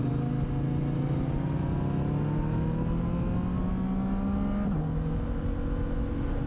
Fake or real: real